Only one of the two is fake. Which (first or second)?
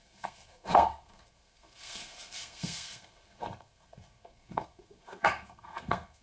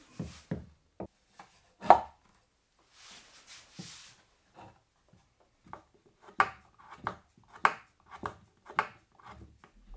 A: first